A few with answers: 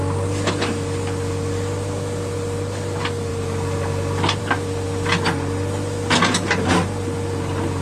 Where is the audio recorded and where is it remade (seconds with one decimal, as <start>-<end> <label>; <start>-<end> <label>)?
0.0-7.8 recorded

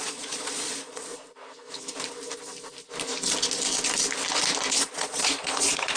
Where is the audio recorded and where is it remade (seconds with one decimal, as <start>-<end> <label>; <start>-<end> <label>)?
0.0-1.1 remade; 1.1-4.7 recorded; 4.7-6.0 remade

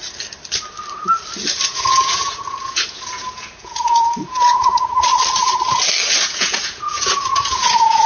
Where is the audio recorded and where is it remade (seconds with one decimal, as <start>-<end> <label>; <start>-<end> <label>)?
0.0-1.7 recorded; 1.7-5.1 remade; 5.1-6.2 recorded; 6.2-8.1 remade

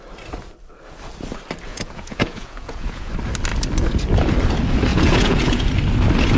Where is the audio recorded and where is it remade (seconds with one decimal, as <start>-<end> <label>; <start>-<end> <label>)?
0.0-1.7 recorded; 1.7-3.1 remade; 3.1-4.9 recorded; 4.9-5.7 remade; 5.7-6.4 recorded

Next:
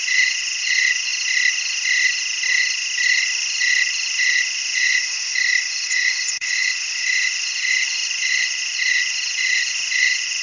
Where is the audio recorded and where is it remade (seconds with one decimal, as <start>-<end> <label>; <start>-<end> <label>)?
0.0-1.1 remade; 1.1-4.6 recorded; 4.6-5.3 remade; 5.3-5.9 recorded; 5.9-10.4 remade